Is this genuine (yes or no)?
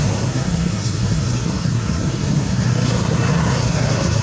no